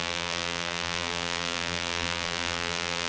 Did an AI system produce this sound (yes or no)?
yes